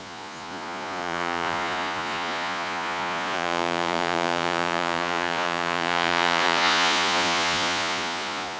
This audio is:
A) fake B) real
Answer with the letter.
A